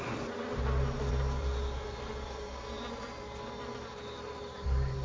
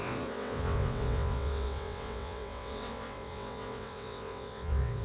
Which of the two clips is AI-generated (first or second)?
second